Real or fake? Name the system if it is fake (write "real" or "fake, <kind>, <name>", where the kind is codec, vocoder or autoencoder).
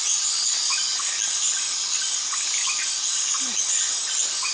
real